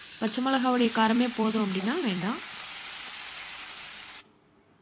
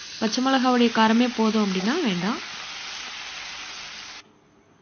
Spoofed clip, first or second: first